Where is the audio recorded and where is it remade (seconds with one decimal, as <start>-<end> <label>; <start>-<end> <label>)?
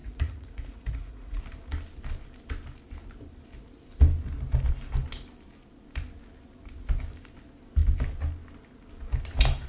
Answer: 0.0-1.4 remade; 1.4-9.7 recorded